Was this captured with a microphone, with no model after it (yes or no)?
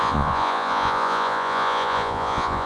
no